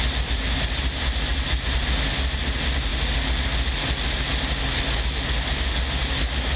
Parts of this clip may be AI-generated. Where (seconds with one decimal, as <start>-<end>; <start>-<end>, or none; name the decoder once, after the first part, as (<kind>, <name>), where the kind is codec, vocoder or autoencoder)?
none